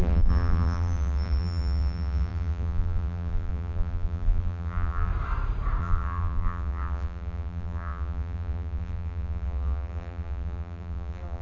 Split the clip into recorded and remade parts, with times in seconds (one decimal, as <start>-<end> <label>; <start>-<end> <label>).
0.0-5.1 remade; 5.1-5.8 recorded; 5.8-11.4 remade